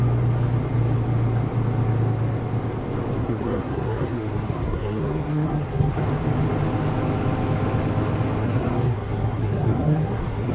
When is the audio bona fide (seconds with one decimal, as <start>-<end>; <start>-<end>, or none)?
0.0-3.2; 5.9-8.4